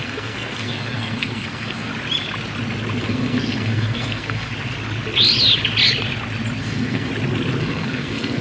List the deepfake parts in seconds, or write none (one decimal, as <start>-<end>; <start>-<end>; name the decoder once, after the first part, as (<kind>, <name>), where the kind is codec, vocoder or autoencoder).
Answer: 0.0-1.9 (codec, SNAC); 3.0-4.5; 6.6-7.1; 7.6-8.4

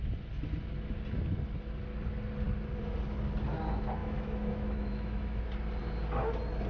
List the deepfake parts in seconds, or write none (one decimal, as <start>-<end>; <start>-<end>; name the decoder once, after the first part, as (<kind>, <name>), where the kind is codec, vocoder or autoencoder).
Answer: 4.0-5.4 (autoencoder, DAC-VAE)

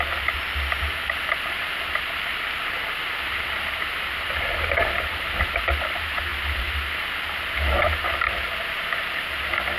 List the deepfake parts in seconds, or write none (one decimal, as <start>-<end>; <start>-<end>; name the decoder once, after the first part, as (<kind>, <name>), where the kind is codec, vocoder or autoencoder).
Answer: none

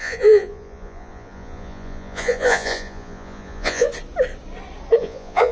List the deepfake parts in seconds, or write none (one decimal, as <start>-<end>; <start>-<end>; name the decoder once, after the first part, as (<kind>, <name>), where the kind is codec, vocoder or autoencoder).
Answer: 0.0-3.9 (vocoder, Vocos); 5.0-5.5

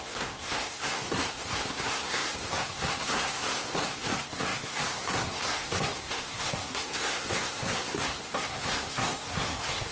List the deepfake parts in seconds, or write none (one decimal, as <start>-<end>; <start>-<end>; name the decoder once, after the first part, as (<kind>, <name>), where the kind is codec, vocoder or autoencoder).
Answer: 0.0-9.9 (codec, SNAC)

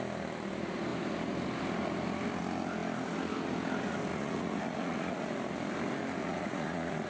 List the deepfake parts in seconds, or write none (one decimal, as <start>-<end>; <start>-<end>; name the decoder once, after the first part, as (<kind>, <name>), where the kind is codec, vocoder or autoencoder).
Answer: 4.1-5.2 (vocoder, Vocos); 6.2-7.1